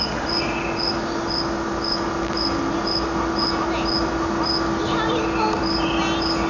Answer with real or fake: real